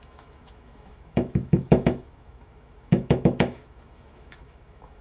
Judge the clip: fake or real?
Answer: fake